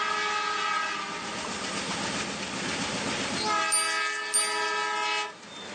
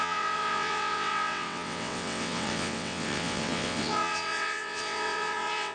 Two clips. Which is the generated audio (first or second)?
second